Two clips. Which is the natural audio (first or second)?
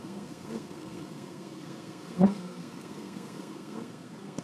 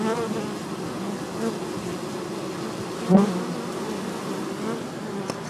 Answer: second